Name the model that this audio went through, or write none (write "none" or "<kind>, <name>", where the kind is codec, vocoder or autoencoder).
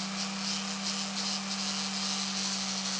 none